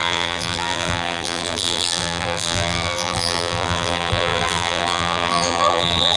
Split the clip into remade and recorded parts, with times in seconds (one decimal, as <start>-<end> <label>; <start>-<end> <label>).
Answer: 0.0-6.2 remade